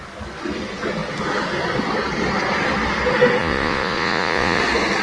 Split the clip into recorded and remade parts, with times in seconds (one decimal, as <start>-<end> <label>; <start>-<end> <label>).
0.0-3.4 recorded; 3.4-4.6 remade; 4.6-5.0 recorded